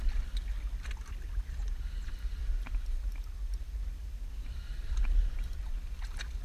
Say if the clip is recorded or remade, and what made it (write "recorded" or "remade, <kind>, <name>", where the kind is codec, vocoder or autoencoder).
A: recorded